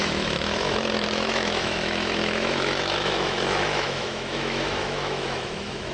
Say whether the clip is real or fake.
fake